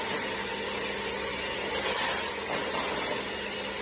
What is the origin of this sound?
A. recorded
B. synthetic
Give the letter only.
A